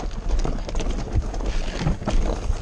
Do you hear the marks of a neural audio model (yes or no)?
no